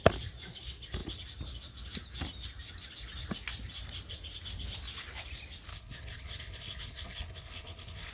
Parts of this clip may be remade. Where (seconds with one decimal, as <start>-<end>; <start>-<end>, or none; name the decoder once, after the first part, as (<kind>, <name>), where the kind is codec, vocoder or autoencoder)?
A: 5.7-8.1 (codec, HILCodec)